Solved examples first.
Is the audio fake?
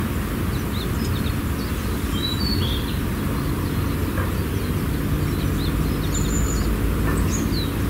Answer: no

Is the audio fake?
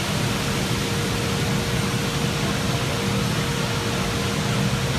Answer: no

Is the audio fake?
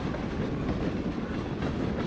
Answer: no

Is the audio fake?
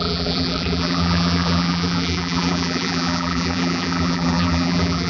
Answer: yes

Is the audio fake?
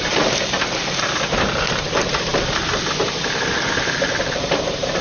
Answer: yes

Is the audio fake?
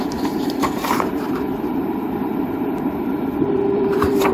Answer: yes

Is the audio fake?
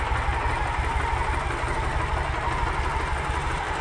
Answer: no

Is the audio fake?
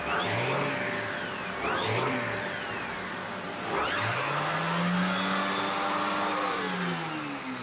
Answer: no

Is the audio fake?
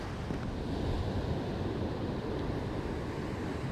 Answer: no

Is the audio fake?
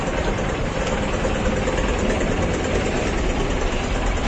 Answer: yes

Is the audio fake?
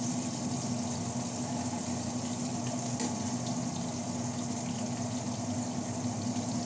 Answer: no